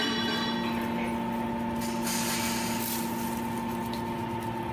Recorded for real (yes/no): yes